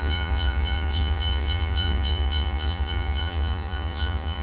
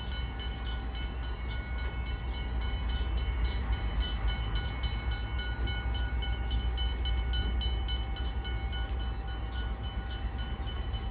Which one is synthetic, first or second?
first